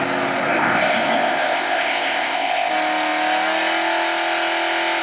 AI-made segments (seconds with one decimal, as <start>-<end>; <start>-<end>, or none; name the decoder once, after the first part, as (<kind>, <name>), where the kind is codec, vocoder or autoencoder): 0.5-2.7 (codec, ZipCodec)